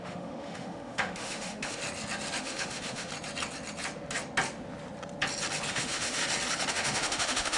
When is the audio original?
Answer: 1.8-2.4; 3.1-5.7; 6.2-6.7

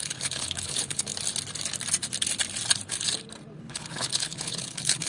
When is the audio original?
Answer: 1.1-3.6